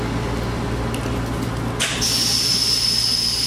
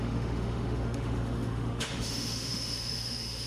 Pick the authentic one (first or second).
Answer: first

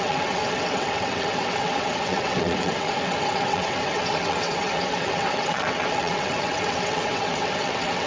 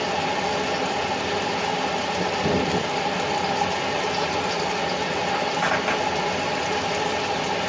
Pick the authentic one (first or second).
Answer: second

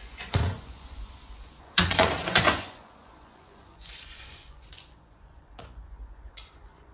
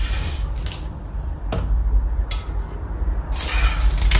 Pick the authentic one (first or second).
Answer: second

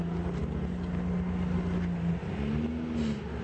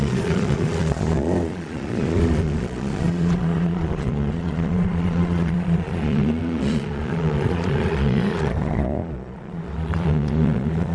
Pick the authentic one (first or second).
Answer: first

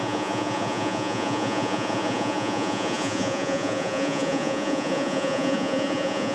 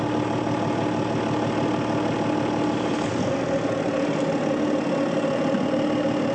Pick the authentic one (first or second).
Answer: second